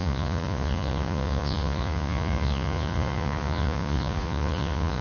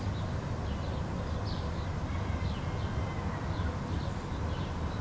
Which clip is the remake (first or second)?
first